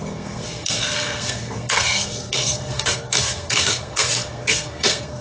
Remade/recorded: remade